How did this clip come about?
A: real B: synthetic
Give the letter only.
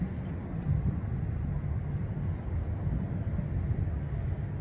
A